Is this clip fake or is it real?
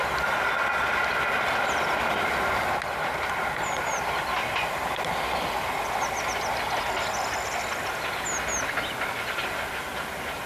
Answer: real